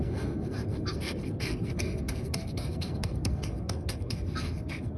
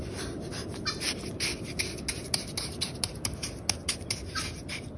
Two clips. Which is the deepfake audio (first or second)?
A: first